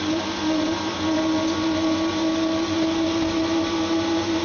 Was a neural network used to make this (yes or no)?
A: no